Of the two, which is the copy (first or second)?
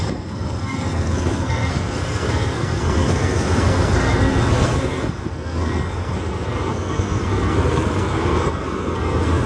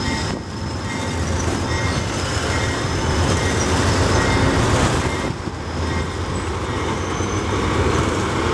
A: first